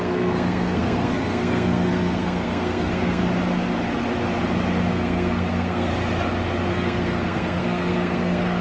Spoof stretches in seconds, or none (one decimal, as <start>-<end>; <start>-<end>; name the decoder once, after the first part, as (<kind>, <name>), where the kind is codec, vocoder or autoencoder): 0.0-3.2 (codec, SNAC); 4.9-5.9; 6.7-8.6